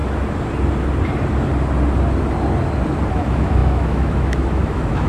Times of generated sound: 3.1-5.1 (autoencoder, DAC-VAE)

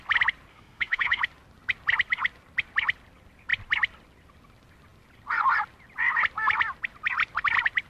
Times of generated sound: 0.5-1.2 (autoencoder, DAC-VAE)

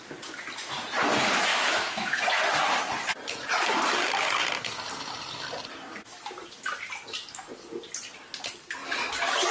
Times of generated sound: 1.5-2.2 (autoencoder, DAC-VAE)

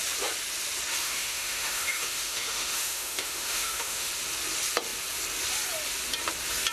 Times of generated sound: 1.0-4.1 (autoencoder, DAC-VAE)

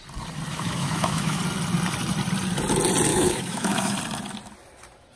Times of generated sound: 0.5-1.4 (autoencoder, DAC-VAE); 3.1-3.9

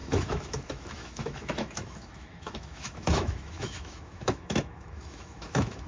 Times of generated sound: 0.0-5.9 (autoencoder, DAC-VAE)

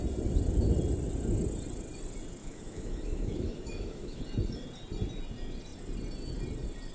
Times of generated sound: 2.4-4.2 (autoencoder, DAC-VAE)

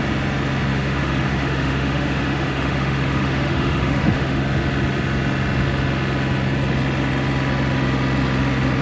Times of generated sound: 0.7-4.4 (autoencoder, DAC-VAE)